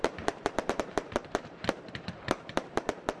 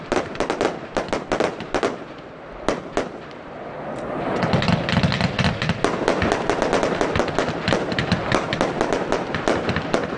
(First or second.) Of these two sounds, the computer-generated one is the first